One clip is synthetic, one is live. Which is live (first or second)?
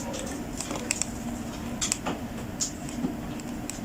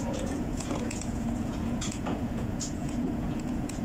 first